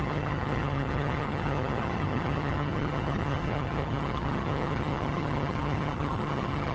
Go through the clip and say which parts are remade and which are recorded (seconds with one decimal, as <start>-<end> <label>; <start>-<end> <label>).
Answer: 0.0-6.7 remade